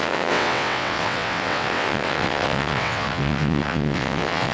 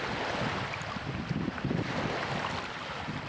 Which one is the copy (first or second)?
first